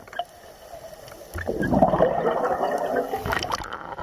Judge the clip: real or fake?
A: real